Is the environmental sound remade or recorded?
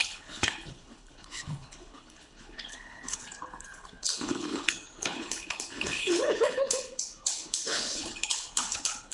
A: remade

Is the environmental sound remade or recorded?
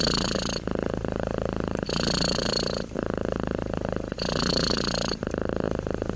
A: remade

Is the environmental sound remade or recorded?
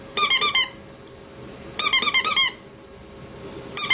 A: recorded